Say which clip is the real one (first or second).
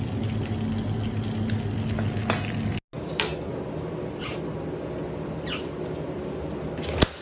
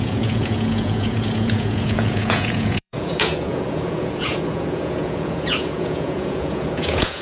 first